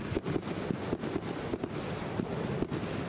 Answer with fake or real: real